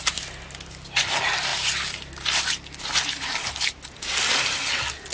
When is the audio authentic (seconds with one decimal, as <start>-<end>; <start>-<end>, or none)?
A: 0.0-5.1

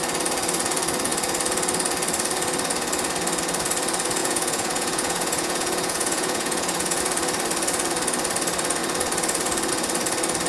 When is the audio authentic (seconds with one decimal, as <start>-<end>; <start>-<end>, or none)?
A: 0.0-4.2; 7.0-10.5